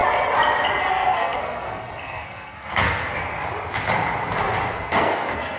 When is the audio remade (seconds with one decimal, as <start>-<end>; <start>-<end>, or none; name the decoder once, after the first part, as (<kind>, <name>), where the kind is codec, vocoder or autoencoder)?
0.9-3.3 (codec, SNAC); 4.7-5.6